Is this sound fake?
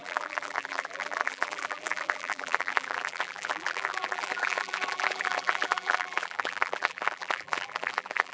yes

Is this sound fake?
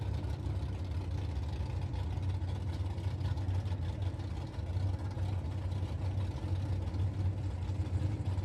no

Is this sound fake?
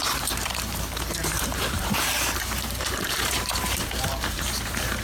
yes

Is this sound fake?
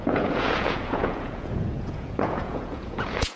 yes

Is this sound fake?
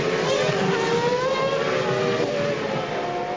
no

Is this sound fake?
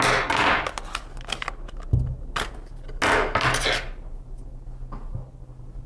no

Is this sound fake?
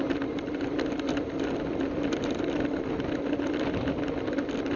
no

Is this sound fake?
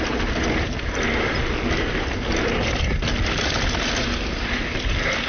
no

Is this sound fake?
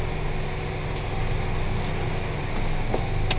no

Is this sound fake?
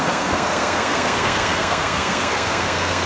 yes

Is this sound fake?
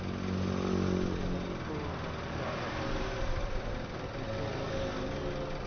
no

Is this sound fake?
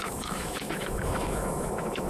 yes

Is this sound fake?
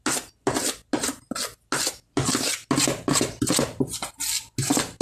no